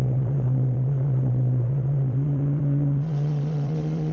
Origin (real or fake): fake